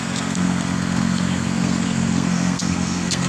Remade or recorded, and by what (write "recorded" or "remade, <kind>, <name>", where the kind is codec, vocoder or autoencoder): remade, codec, SNAC